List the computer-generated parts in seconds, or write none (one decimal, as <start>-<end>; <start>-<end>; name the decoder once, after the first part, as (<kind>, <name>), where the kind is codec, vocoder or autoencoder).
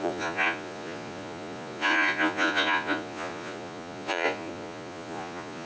0.0-5.7 (vocoder, Vocos)